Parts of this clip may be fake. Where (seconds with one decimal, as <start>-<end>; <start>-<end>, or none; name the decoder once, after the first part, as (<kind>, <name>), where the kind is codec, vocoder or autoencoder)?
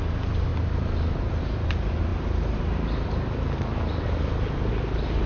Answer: none